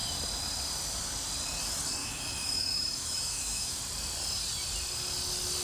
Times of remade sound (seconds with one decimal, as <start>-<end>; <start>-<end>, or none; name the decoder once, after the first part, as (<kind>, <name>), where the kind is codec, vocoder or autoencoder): 2.0-3.8 (autoencoder, DAC-VAE)